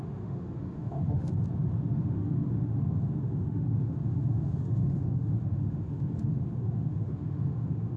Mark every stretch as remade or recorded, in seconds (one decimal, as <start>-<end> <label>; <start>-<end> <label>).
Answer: 0.0-1.3 remade; 1.3-2.0 recorded; 2.0-8.0 remade